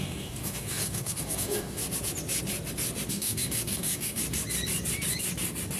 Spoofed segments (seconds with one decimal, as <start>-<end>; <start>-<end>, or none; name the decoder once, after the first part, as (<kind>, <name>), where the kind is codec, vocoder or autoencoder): 0.0-1.8 (codec, DAC); 3.1-4.2